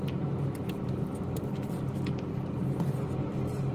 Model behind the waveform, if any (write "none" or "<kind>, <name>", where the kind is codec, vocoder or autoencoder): vocoder, BigVGAN v2